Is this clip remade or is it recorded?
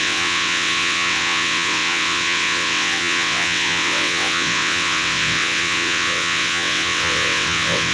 remade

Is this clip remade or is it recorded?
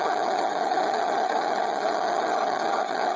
remade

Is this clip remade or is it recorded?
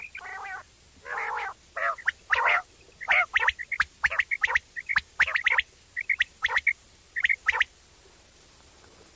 recorded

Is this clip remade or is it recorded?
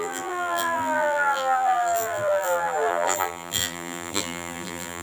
remade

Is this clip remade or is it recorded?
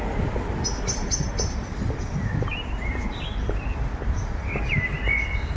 recorded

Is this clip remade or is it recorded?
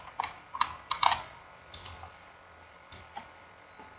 recorded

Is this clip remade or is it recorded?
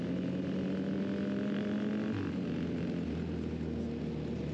recorded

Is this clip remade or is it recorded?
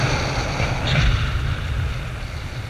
recorded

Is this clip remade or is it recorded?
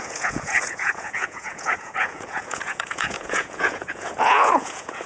remade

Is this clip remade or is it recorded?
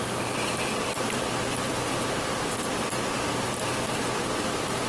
recorded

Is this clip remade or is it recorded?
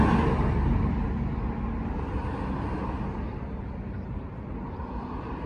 recorded